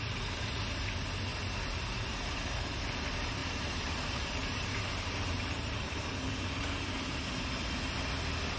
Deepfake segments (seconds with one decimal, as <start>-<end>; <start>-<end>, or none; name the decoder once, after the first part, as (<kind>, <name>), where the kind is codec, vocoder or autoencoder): 1.3-2.8 (vocoder, BigVGAN v2); 3.4-6.7